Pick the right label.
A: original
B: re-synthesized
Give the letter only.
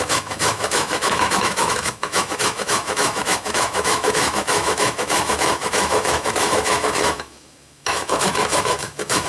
B